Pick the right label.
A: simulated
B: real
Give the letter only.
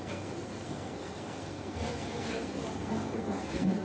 A